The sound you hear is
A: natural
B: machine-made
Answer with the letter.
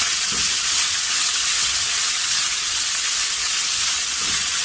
B